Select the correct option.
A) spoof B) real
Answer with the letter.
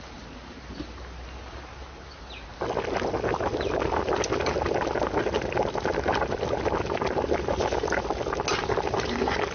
B